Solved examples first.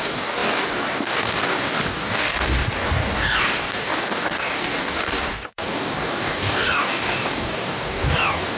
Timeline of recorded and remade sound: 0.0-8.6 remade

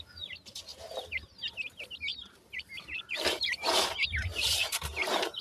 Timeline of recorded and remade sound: 0.0-0.7 recorded; 0.7-1.3 remade; 1.3-2.1 recorded; 2.1-5.4 remade

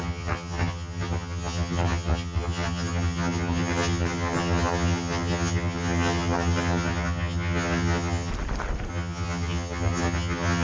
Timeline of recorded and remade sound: 0.0-8.3 remade; 8.3-8.9 recorded; 8.9-10.6 remade

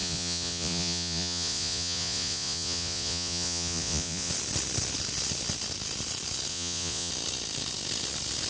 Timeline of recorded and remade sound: 0.0-4.3 remade; 4.3-6.5 recorded; 6.5-7.1 remade; 7.1-8.5 recorded